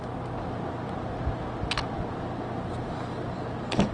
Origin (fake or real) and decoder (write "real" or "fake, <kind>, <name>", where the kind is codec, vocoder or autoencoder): real